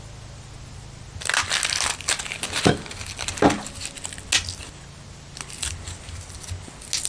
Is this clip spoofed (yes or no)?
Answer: no